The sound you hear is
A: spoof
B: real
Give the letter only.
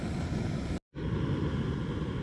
B